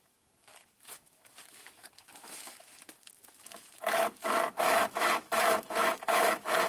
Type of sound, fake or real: fake